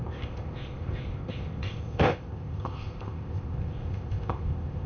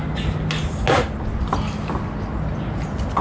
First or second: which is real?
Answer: second